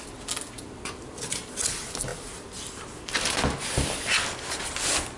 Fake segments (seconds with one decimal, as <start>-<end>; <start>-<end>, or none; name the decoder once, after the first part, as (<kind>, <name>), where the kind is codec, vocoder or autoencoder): none